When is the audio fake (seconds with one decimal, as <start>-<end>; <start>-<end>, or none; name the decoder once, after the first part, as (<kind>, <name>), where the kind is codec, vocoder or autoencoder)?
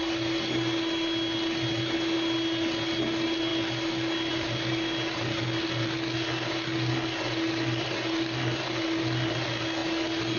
none